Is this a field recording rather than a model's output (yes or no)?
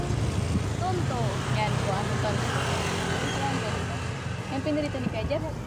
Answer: yes